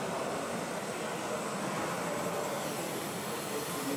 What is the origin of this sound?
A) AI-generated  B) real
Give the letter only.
B